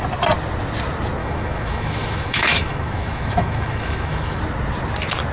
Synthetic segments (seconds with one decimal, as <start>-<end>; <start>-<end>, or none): 1.2-4.4